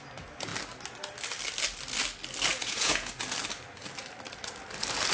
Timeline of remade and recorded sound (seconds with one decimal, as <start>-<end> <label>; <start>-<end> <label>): 0.0-2.5 recorded; 2.5-3.1 remade; 3.1-5.1 recorded